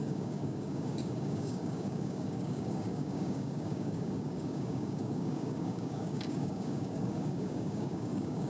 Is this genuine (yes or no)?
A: no